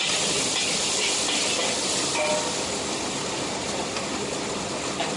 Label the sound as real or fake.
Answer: real